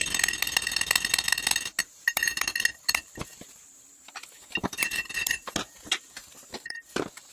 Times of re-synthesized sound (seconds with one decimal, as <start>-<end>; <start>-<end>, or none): 1.8-2.4; 3.3-5.1; 6.2-7.3